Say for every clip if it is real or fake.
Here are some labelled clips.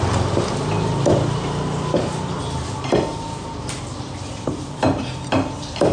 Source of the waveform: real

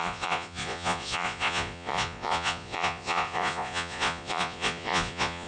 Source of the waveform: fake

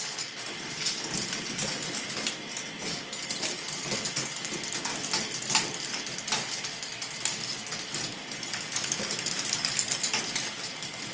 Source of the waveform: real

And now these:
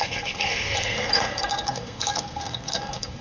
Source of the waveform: fake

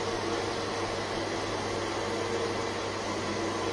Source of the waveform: real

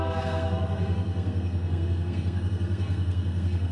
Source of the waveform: fake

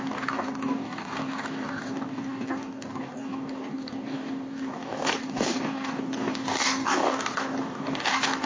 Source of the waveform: fake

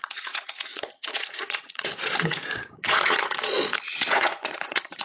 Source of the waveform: fake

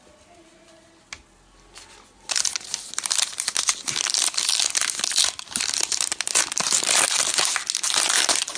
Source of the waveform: real